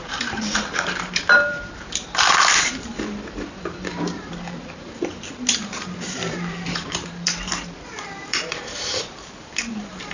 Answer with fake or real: fake